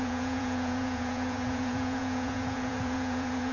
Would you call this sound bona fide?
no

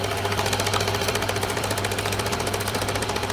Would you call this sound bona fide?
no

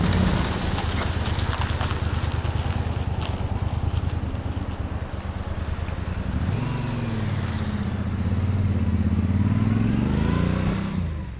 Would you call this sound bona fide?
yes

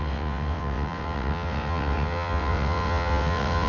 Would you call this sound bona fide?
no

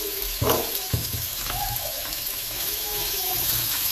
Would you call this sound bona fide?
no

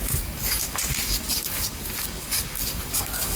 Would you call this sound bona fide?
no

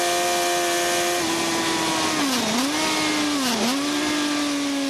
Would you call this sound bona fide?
yes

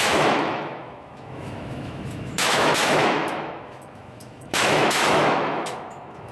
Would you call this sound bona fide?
no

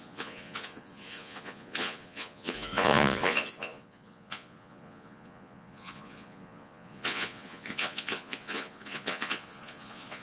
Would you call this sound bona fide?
no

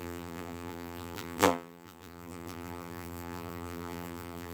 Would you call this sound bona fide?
no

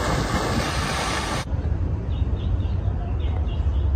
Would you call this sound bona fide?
yes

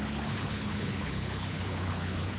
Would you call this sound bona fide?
no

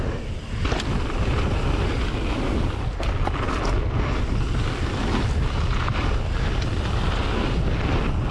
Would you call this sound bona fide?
yes